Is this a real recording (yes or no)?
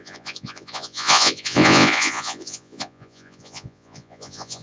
no